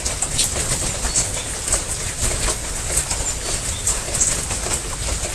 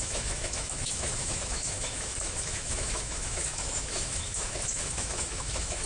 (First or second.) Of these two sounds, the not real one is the second